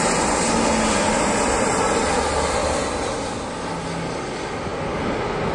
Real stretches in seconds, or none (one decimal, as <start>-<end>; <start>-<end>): 0.0-5.5